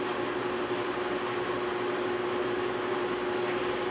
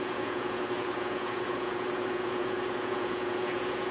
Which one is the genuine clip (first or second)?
first